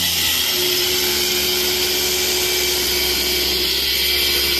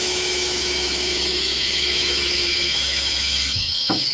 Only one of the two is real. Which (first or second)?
first